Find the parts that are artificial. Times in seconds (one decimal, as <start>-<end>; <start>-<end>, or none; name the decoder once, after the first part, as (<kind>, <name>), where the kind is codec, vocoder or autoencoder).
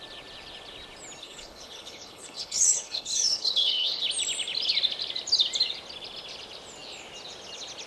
1.2-4.0 (codec, HILCodec)